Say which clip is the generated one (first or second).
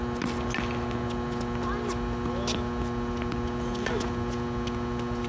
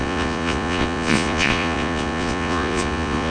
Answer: second